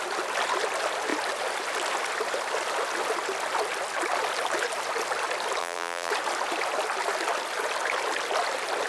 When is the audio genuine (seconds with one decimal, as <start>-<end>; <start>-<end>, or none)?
0.0-5.6; 6.1-8.9